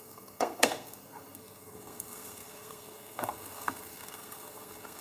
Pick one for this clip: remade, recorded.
remade